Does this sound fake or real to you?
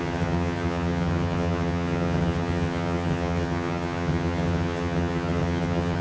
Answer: fake